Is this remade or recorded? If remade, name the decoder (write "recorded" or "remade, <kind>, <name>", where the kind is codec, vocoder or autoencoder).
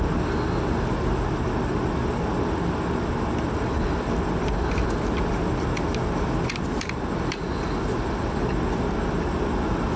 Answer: recorded